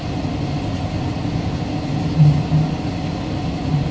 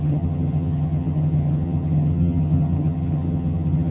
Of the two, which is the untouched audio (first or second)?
first